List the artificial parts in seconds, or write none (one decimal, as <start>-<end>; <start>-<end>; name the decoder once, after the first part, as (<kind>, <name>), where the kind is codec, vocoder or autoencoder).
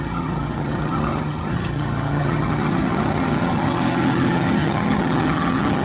0.0-5.8 (vocoder, HiFi-GAN)